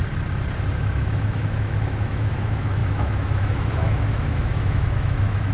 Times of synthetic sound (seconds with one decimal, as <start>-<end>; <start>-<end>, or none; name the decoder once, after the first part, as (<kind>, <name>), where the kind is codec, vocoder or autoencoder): 0.8-5.5 (autoencoder, DAC-VAE)

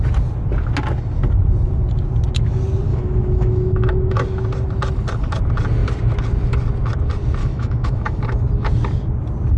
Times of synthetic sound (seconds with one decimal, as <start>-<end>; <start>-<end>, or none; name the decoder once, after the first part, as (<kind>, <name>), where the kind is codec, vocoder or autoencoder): 2.9-4.2 (autoencoder, DAC-VAE); 7.4-8.2

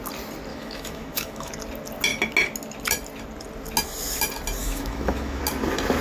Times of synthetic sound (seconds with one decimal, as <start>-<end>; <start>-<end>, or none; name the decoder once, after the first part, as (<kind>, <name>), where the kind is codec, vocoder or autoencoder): 0.5-1.5 (autoencoder, DAC-VAE); 4.6-5.4

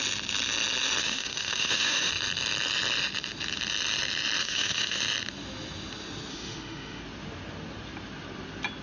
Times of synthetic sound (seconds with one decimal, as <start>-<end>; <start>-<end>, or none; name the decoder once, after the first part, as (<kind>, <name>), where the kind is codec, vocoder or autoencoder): 1.0-2.1 (autoencoder, DAC-VAE); 4.4-5.0; 6.3-7.0

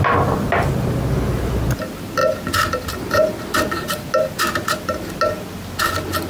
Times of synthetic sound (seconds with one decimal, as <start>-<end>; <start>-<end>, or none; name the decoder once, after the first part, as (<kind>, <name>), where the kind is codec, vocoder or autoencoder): none

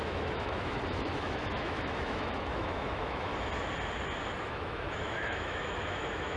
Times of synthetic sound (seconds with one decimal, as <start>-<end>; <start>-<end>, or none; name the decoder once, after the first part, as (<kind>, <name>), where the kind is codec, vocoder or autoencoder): 0.0-3.3 (autoencoder, DAC-VAE); 4.4-6.4